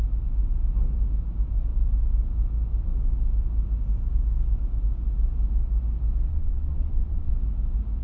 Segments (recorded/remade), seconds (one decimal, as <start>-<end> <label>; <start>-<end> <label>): 0.0-6.3 recorded; 6.3-7.3 remade; 7.3-8.0 recorded